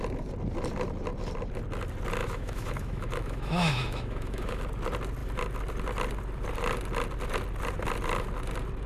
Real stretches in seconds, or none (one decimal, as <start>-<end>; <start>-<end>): 0.0-2.2; 4.6-8.9